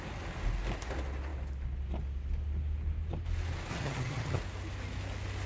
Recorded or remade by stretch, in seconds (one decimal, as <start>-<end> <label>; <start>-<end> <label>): 0.0-3.7 recorded; 3.7-4.4 remade; 4.4-5.5 recorded